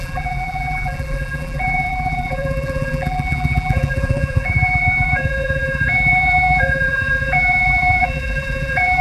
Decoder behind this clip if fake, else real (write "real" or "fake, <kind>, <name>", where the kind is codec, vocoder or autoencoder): fake, vocoder, BigVGAN v2